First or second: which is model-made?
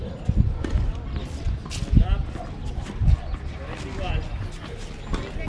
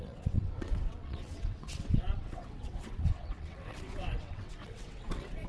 second